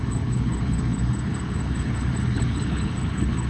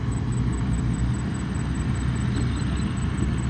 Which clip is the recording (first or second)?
second